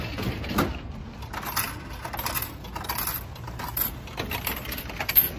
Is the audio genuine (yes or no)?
yes